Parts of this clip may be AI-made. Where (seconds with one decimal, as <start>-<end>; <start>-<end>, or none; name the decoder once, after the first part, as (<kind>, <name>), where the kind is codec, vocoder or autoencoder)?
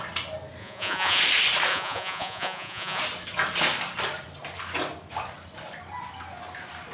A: 0.6-1.2 (vocoder, Vocos); 1.7-3.0